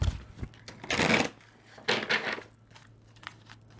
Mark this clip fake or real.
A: real